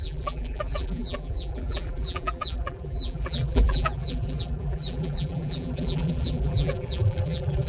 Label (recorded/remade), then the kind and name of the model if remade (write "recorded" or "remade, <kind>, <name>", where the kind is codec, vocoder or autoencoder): remade, vocoder, BigVGAN v2